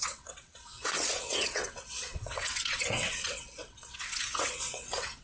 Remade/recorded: remade